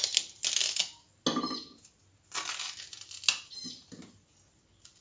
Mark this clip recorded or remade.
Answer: recorded